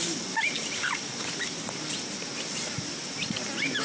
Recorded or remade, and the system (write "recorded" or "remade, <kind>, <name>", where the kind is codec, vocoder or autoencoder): remade, vocoder, BigVGAN v2